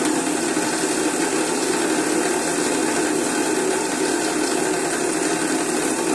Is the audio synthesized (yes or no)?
no